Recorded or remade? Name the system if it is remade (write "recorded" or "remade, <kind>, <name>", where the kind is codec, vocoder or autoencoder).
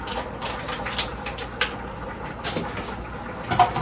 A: recorded